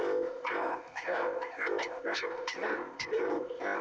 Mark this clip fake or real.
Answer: fake